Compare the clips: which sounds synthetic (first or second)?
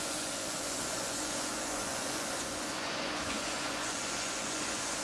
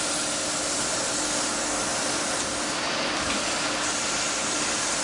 first